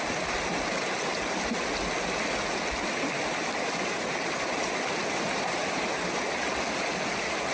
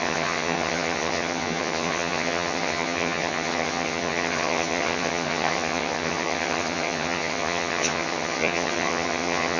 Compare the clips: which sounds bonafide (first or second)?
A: first